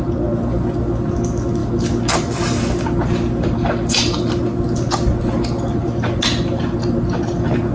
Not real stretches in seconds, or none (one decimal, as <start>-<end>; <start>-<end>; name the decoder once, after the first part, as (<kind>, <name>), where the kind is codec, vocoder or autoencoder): none